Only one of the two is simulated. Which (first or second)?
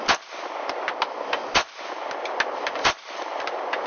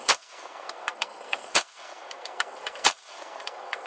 second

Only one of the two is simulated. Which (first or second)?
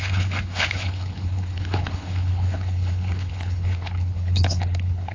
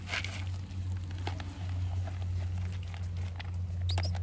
first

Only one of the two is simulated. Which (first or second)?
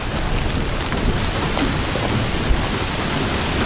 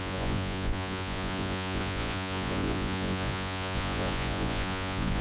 second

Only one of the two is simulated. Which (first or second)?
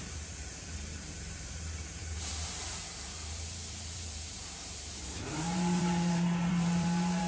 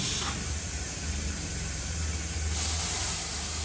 first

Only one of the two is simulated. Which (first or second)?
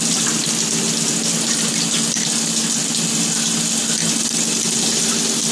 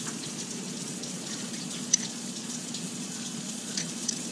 second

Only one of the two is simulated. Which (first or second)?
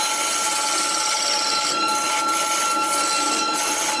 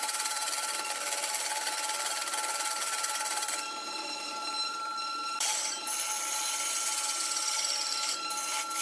second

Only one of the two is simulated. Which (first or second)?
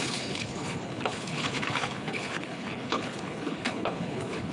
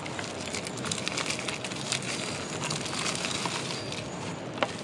first